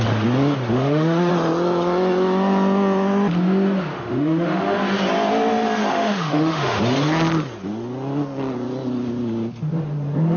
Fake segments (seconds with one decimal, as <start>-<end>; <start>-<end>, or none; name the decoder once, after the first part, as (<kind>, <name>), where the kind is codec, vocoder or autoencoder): 0.7-1.3 (autoencoder, DAC-VAE); 3.9-4.8; 5.9-6.8